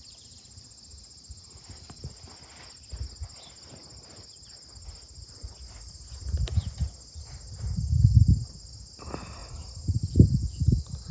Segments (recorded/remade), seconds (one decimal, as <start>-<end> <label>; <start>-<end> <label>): 0.0-11.1 recorded